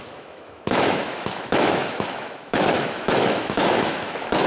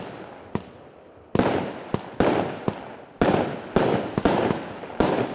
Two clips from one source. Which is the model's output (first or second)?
first